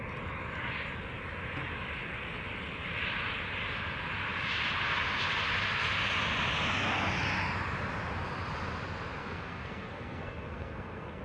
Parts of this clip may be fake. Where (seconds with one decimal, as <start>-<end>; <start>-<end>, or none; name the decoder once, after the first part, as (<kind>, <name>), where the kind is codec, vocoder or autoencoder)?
9.2-11.2 (codec, SNAC)